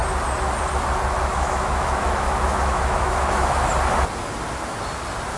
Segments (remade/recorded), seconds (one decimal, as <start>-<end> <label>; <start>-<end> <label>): 0.0-1.3 recorded; 1.3-3.7 remade; 3.7-5.4 recorded